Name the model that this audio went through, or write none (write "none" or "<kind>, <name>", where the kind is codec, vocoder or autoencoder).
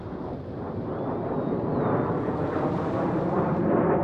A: none